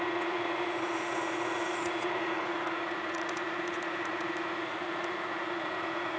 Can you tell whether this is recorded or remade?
remade